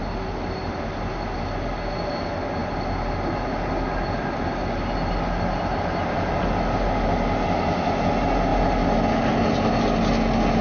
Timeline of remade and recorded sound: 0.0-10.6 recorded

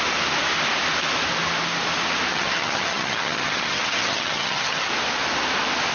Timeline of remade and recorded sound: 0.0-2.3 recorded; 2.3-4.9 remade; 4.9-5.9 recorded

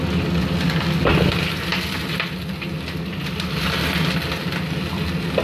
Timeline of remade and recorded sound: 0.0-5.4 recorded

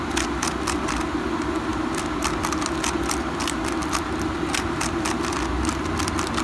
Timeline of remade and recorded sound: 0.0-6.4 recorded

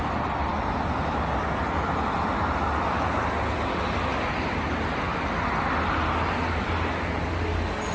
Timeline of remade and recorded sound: 0.0-7.9 recorded

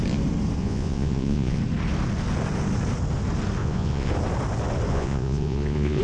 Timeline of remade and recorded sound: 0.0-0.6 recorded; 0.6-1.6 remade; 1.6-3.6 recorded; 3.6-4.1 remade; 4.1-4.9 recorded; 4.9-6.0 remade

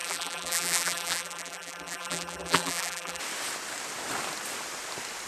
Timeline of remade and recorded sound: 0.0-3.2 remade; 3.2-5.3 recorded